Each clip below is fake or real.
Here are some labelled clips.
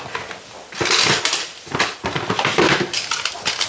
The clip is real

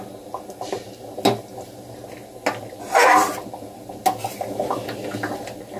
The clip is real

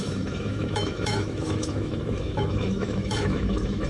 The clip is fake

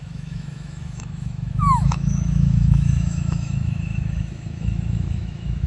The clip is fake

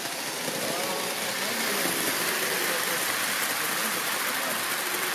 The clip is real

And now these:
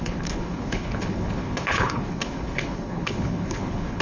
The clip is fake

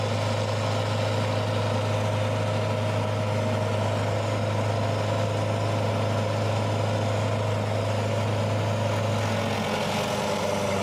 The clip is real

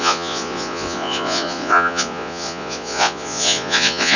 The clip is fake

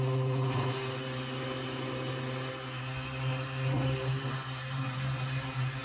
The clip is real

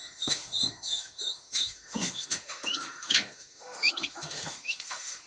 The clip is fake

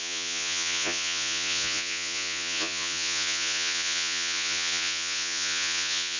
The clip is fake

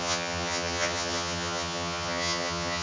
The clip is fake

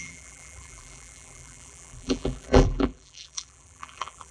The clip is fake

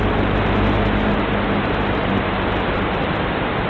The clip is real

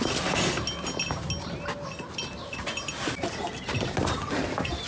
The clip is real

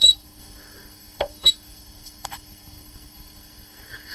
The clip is fake